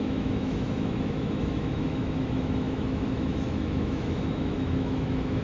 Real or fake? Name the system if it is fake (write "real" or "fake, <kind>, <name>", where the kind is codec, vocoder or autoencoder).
fake, autoencoder, DAC-VAE